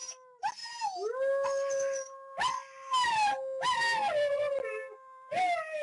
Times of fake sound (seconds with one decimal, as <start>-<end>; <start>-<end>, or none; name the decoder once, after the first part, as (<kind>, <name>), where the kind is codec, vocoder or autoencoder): none